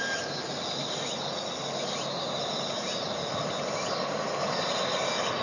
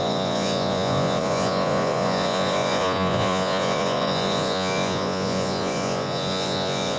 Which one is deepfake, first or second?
second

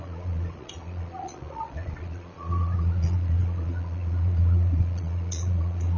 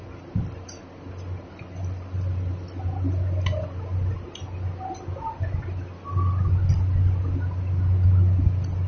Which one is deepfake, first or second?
first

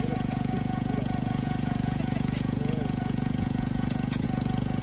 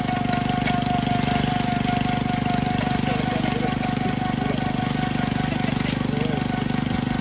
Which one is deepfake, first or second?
first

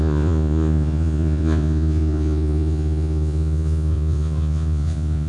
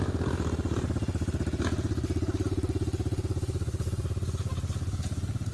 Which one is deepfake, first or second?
first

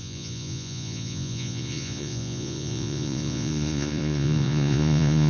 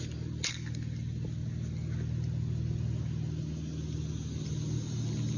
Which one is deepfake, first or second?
first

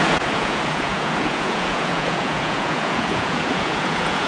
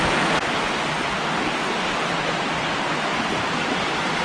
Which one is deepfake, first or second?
first